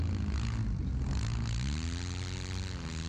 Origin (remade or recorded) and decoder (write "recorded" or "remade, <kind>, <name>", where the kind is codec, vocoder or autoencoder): recorded